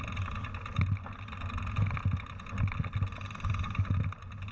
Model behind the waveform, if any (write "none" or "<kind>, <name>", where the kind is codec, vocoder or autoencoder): none